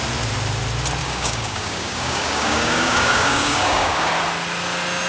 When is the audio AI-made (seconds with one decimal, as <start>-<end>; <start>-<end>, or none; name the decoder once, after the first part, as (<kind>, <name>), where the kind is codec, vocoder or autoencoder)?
1.0-4.1 (codec, DAC)